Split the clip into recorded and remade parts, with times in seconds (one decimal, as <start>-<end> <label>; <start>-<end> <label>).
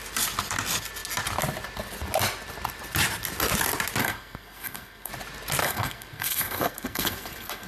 0.0-4.0 recorded; 4.0-5.1 remade; 5.1-5.6 recorded; 5.6-7.7 remade